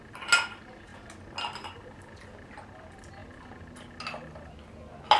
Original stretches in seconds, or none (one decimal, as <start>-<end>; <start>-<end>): 0.0-5.2